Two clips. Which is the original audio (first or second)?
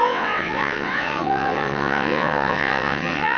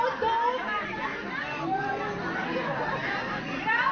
second